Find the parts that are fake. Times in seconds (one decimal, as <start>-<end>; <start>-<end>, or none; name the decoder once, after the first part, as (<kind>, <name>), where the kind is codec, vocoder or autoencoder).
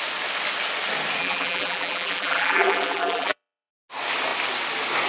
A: 1.2-3.7 (vocoder, BigVGAN v2)